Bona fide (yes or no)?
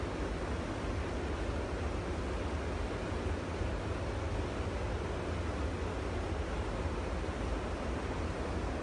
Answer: yes